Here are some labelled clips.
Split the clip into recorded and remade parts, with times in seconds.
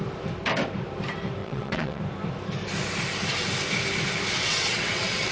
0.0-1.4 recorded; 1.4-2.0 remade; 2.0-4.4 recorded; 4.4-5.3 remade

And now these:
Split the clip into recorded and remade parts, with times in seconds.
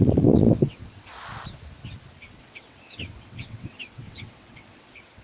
0.0-1.1 remade; 1.1-2.4 recorded; 2.4-5.2 remade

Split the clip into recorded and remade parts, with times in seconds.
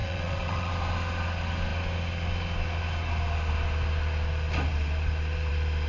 0.0-0.7 remade; 0.7-5.9 recorded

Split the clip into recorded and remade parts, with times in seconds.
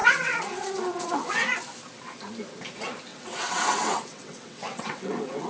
0.0-1.3 remade; 1.3-3.1 recorded; 3.1-5.5 remade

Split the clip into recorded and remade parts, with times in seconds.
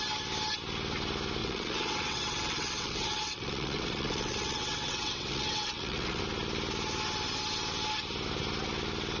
0.0-1.4 recorded; 1.4-6.2 remade; 6.2-9.2 recorded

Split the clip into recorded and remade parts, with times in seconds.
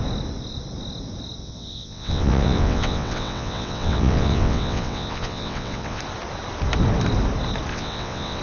0.0-1.4 recorded; 1.4-6.0 remade; 6.0-7.7 recorded; 7.7-8.4 remade